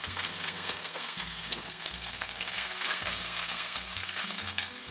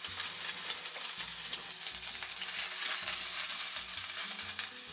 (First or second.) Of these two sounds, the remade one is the first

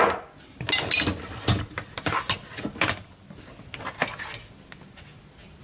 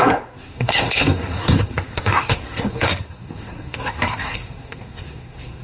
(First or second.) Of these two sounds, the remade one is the second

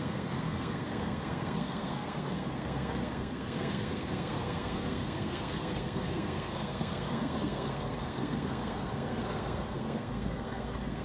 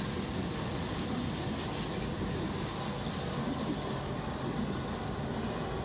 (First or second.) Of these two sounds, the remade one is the first